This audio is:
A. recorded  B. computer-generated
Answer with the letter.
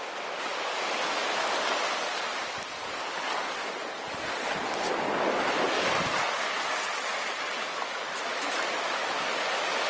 A